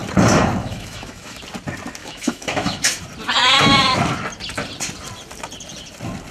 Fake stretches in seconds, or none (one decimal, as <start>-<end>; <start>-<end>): 0.6-1.4; 2.0-3.0